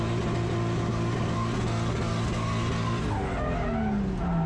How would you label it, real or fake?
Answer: real